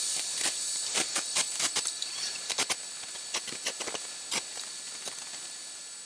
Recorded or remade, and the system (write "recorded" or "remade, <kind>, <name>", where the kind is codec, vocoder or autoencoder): recorded